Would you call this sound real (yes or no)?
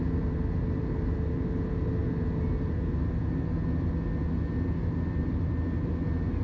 yes